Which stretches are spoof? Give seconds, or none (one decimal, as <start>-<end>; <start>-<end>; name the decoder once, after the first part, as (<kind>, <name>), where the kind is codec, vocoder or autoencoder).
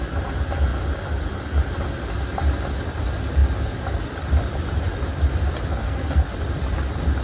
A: 5.8-6.3 (codec, SNAC)